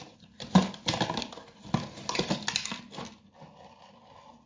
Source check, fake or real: real